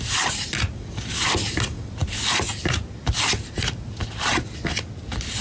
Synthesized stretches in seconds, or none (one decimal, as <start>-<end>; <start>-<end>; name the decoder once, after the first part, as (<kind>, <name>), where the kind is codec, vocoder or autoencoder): none

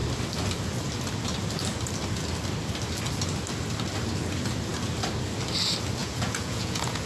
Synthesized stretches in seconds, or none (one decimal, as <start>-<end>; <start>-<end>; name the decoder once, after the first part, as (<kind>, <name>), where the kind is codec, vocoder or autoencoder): 6.0-7.1 (vocoder, Vocos)

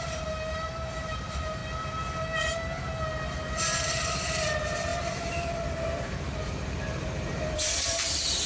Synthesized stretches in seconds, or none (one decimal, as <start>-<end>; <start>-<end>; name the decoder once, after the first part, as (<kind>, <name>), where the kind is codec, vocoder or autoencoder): 0.0-1.6 (vocoder, BigVGAN v2); 3.3-8.5